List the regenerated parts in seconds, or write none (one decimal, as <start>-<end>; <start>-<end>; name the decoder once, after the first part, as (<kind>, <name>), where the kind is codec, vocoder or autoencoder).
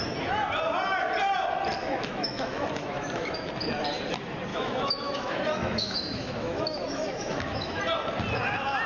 1.8-3.5 (autoencoder, DAC-VAE); 4.5-7.8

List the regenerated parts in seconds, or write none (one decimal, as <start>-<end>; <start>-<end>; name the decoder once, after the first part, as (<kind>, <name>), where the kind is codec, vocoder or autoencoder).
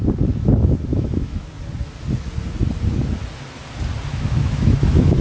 0.9-1.5 (autoencoder, DAC-VAE); 4.1-5.2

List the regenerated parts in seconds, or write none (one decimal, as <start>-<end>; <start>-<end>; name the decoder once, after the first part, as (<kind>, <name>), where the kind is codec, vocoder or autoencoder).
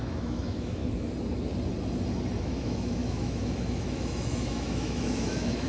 0.0-0.8 (autoencoder, DAC-VAE); 2.4-5.7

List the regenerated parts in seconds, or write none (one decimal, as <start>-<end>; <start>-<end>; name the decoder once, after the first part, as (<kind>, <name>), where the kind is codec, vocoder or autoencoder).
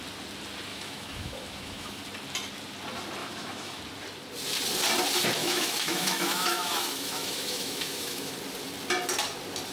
0.7-2.0 (autoencoder, DAC-VAE); 3.2-3.8; 5.4-8.3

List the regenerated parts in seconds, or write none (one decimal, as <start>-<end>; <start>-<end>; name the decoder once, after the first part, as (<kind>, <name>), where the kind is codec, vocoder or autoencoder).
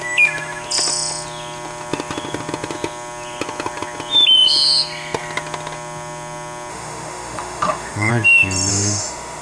6.7-8.1 (autoencoder, DAC-VAE); 8.7-9.4